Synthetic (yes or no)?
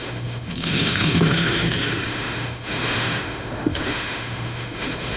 yes